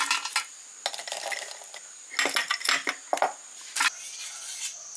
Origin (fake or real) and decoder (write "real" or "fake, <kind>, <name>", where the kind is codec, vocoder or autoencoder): real